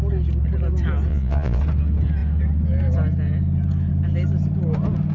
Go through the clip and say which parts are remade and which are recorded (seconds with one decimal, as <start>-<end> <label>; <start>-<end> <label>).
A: 0.0-1.1 recorded; 1.1-1.6 remade; 1.6-5.1 recorded